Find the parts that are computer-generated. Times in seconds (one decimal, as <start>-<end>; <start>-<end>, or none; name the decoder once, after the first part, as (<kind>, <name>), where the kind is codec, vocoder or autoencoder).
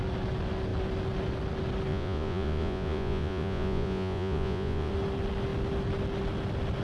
1.9-4.9 (vocoder, Vocos)